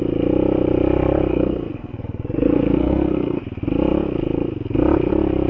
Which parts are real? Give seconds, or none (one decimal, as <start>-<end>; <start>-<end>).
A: 0.0-1.3; 3.4-5.5